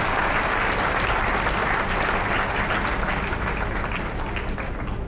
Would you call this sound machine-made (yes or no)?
no